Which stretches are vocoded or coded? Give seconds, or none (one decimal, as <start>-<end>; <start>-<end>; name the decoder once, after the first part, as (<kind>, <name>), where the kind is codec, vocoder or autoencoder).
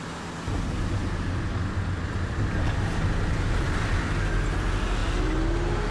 none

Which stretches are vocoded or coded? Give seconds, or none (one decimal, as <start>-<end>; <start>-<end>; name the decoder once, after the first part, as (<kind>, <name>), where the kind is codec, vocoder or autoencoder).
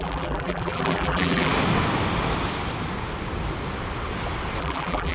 0.0-1.5 (vocoder, BigVGAN v2); 4.6-5.1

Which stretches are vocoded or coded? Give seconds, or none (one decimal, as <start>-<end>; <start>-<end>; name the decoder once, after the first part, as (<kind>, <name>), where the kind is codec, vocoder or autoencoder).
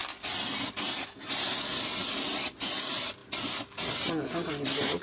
none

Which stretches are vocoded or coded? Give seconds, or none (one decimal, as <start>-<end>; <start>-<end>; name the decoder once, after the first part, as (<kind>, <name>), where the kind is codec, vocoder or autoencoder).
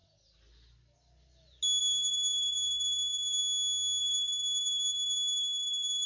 1.8-3.4 (vocoder, BigVGAN v2); 4.0-6.1